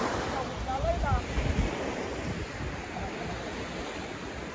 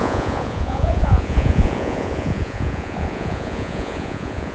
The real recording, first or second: first